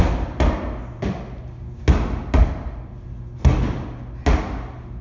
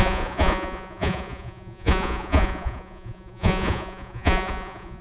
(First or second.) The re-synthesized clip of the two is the second